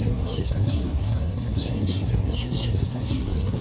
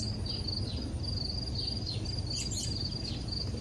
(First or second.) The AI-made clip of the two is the first